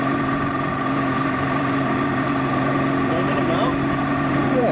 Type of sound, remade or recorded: remade